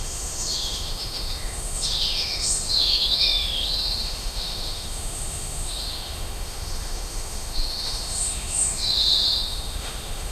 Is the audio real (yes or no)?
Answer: no